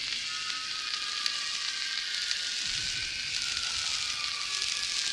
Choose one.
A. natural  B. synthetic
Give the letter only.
A